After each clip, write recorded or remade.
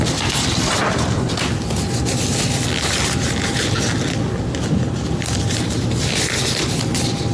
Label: recorded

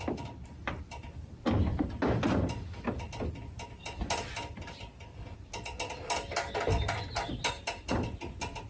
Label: recorded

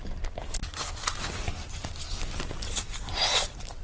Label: recorded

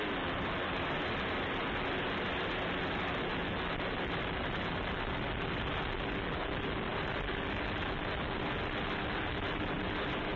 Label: recorded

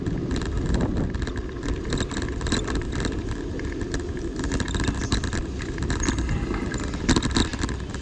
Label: recorded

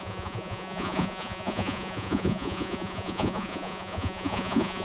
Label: remade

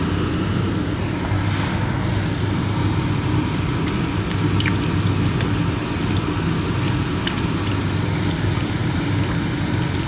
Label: recorded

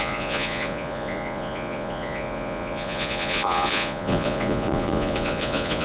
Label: remade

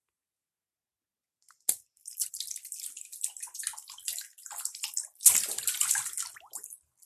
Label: recorded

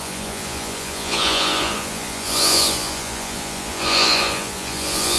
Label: remade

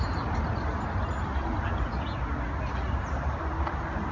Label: recorded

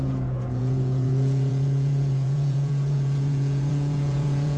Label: remade